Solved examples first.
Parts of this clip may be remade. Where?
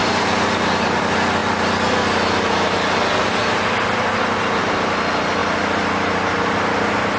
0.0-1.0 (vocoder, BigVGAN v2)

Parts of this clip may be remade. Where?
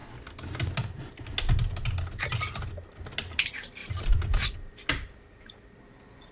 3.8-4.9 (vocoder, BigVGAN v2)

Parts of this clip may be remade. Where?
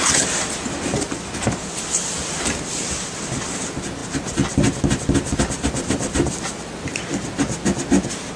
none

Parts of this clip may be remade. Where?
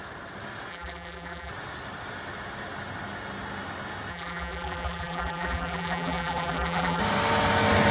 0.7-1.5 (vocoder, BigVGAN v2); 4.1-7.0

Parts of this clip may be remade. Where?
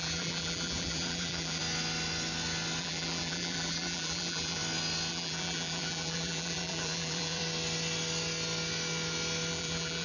0.0-1.6 (vocoder, BigVGAN v2); 2.8-4.6; 5.1-7.4; 9.5-10.0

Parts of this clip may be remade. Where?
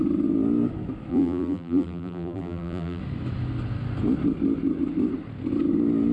1.1-3.0 (vocoder, BigVGAN v2)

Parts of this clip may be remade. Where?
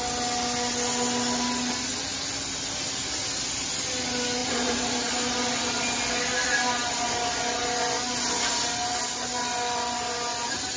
4.4-5.1 (vocoder, BigVGAN v2)